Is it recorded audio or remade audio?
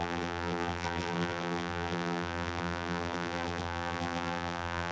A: remade